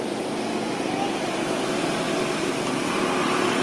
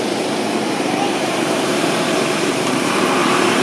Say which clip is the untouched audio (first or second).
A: first